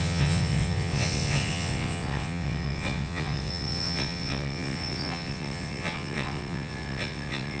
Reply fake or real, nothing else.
fake